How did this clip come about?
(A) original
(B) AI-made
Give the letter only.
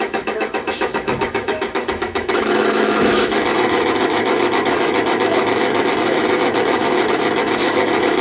B